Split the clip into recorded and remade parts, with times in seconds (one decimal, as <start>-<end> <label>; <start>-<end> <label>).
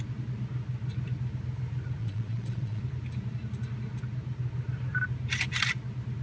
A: 0.0-2.0 recorded; 2.0-2.8 remade; 2.8-6.2 recorded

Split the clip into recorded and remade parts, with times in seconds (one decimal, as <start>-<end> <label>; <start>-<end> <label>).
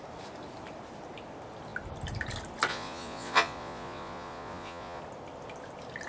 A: 0.0-2.7 recorded; 2.7-5.0 remade; 5.0-6.1 recorded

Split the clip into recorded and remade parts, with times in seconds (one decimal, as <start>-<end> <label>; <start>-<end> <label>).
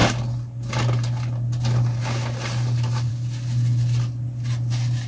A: 0.0-5.1 recorded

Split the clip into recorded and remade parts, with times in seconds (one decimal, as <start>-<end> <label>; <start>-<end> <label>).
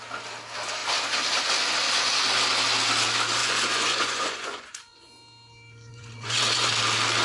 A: 0.0-3.4 recorded; 3.4-5.1 remade; 5.1-5.9 recorded; 5.9-6.7 remade; 6.7-7.2 recorded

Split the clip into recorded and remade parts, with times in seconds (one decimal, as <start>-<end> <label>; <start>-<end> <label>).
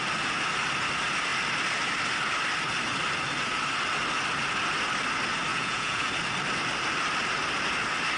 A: 0.0-5.5 recorded; 5.5-6.1 remade; 6.1-8.2 recorded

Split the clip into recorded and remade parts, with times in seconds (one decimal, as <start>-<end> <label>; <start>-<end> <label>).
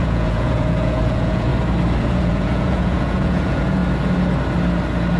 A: 0.0-1.5 remade; 1.5-2.0 recorded; 2.0-3.8 remade; 3.8-5.2 recorded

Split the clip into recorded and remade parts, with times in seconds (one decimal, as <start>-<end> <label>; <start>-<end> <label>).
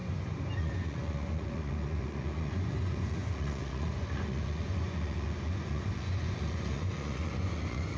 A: 0.0-0.6 recorded; 0.6-8.0 remade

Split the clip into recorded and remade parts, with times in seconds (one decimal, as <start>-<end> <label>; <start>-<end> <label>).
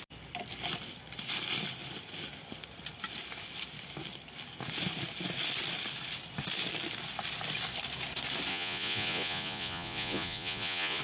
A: 0.0-8.5 recorded; 8.5-11.0 remade